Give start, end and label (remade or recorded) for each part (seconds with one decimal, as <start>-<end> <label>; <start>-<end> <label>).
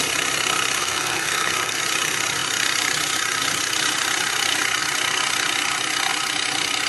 0.0-0.8 recorded; 0.8-1.8 remade; 1.8-6.9 recorded